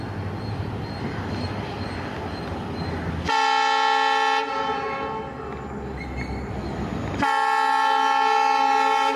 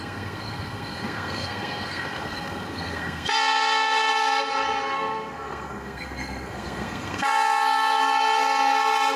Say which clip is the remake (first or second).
second